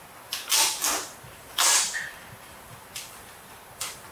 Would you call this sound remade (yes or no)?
no